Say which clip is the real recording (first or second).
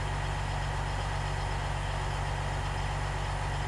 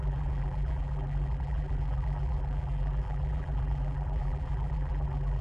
first